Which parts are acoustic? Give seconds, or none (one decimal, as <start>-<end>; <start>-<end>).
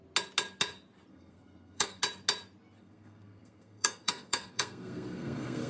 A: 0.0-1.1; 2.0-2.8